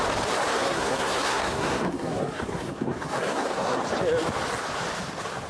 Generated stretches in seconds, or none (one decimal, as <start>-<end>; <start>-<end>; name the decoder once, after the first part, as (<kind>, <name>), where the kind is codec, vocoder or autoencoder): 0.5-3.8 (codec, SNAC)